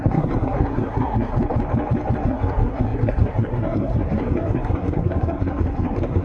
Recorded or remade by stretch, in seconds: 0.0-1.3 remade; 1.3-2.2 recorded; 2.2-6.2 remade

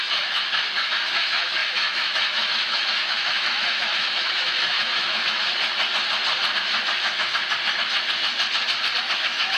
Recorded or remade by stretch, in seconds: 0.0-5.4 remade; 5.4-7.0 recorded; 7.0-7.4 remade; 7.4-9.0 recorded; 9.0-9.6 remade

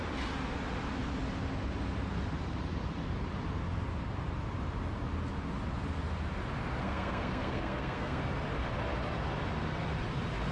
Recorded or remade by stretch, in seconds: 0.0-6.8 recorded; 6.8-8.2 remade; 8.2-10.5 recorded

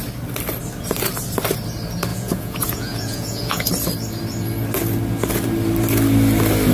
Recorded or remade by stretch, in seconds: 0.0-2.1 recorded; 2.1-3.7 remade; 3.7-6.7 recorded